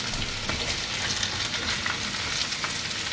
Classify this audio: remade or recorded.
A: recorded